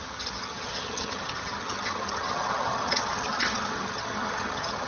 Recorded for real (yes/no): no